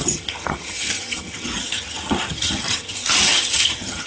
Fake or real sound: fake